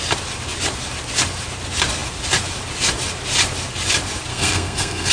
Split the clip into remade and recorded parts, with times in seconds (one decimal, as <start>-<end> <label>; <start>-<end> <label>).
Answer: 0.0-4.3 recorded; 4.3-5.1 remade